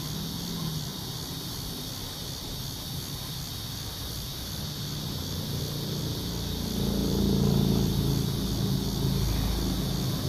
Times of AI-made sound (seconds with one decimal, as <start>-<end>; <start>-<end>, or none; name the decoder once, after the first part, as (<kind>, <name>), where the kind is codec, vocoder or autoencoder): 0.9-5.6 (vocoder, BigVGAN v2); 7.0-8.0